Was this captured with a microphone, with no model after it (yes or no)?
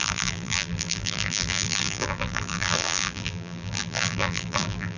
no